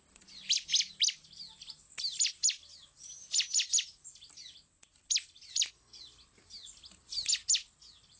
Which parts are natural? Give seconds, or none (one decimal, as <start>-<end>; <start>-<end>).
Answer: 0.0-8.2